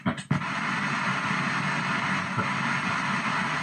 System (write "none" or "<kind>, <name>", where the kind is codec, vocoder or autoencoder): none